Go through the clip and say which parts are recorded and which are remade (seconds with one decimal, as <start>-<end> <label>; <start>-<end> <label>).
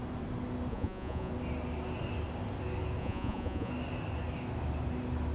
0.0-0.7 recorded; 0.7-1.3 remade; 1.3-3.0 recorded; 3.0-3.7 remade; 3.7-5.3 recorded